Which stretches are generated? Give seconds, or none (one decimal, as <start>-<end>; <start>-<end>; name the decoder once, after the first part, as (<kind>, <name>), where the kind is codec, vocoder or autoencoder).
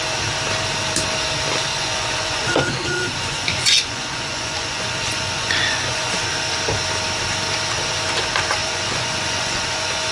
1.7-6.1 (vocoder, Vocos); 8.6-10.1